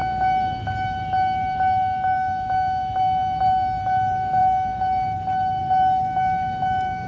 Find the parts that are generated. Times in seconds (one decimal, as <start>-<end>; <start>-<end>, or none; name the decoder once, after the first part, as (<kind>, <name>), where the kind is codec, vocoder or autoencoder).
none